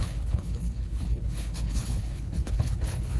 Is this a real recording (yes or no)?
no